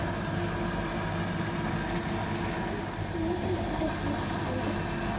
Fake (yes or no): no